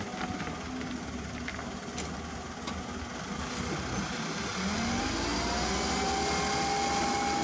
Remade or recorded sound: recorded